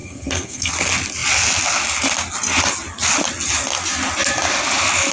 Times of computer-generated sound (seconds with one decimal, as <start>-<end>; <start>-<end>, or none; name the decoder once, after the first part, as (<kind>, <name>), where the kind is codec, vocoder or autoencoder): 0.0-0.7 (codec, SNAC)